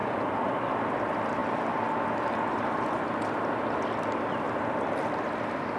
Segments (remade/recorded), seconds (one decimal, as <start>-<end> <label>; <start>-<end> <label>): 0.0-0.7 remade; 0.7-5.8 recorded